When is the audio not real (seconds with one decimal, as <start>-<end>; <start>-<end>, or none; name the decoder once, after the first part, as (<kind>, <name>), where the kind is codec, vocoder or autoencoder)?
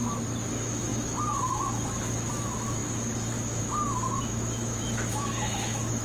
0.5-6.0 (autoencoder, DAC-VAE)